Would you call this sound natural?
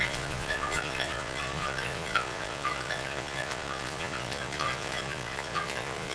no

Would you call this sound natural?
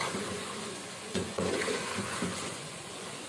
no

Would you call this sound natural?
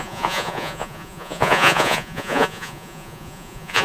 no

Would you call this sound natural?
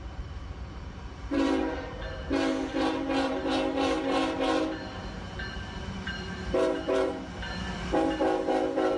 no